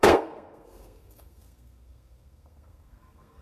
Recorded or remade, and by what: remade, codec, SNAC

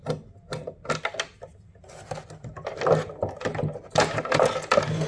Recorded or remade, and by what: recorded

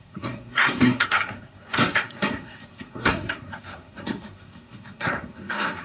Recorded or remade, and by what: remade, codec, SNAC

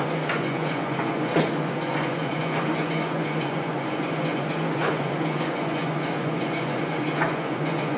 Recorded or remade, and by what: remade, vocoder, Vocos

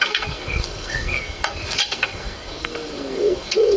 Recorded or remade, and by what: remade, codec, SNAC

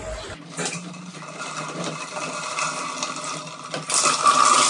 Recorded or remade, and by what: recorded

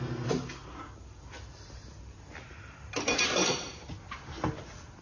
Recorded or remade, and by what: recorded